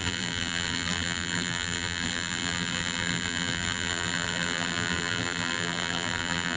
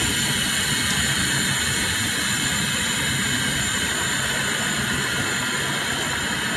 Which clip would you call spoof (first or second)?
first